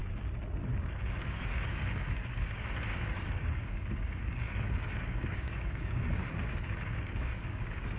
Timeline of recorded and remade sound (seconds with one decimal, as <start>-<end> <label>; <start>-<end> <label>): 0.0-0.8 recorded; 0.8-8.0 remade